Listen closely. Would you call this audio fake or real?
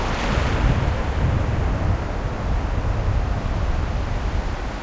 real